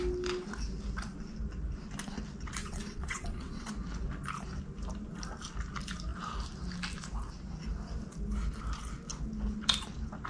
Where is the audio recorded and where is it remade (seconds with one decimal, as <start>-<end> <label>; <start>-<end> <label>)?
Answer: 0.0-2.6 recorded; 2.6-3.7 remade; 3.7-10.3 recorded